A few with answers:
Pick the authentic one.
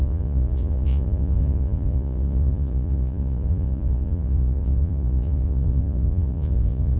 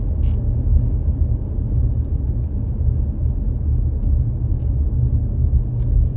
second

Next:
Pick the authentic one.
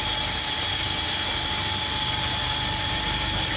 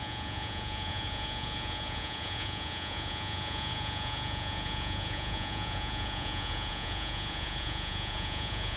first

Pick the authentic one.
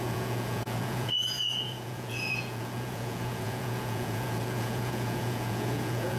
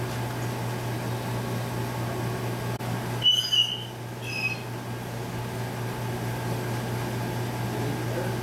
second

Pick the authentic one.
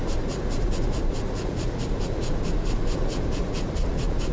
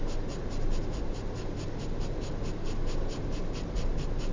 second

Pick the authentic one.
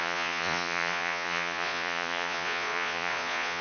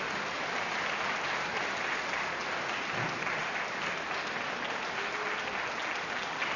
second